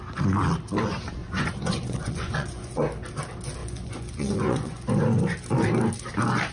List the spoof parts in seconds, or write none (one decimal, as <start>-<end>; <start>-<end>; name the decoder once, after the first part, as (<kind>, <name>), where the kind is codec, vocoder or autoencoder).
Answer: 1.2-2.8 (vocoder, Vocos); 3.6-5.0